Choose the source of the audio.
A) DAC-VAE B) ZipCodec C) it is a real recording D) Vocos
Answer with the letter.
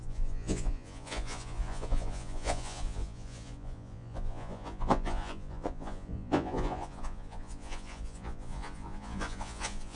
D